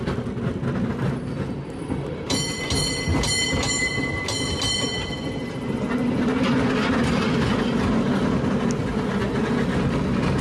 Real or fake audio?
real